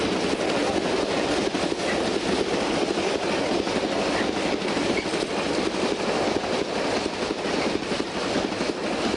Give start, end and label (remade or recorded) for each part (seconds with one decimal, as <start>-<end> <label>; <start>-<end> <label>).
0.0-9.2 recorded